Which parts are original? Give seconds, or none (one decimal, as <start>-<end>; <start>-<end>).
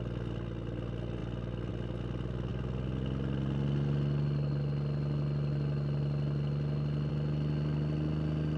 0.0-8.6